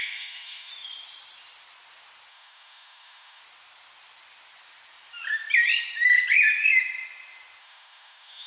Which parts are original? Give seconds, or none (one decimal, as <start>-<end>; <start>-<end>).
0.7-2.3; 3.4-7.6